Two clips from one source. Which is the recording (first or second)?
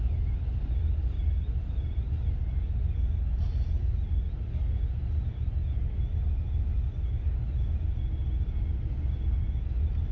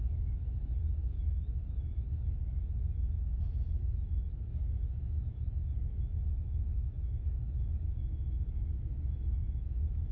first